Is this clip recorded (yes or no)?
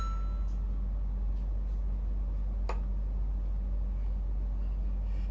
yes